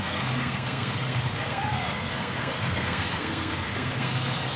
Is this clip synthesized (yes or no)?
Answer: yes